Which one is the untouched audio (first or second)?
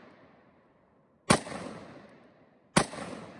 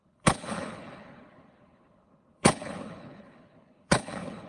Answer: first